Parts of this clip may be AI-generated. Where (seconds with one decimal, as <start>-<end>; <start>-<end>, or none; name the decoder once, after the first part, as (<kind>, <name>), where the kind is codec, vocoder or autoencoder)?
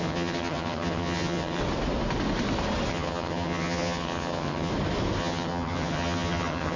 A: 0.0-1.6 (vocoder, HiFi-GAN); 2.9-4.7; 5.2-6.8